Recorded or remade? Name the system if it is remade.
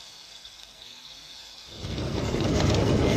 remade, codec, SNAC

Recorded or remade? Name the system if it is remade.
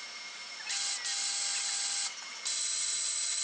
recorded